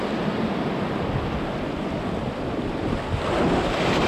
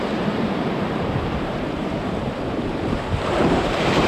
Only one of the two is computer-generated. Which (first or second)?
second